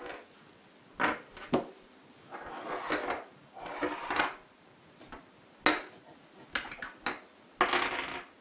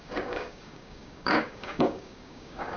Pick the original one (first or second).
first